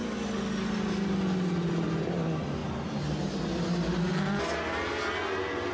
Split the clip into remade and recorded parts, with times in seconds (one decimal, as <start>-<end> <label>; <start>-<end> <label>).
0.0-5.7 recorded